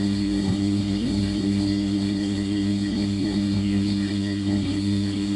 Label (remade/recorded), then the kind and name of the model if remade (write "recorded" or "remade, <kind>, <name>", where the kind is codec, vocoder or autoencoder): remade, codec, SNAC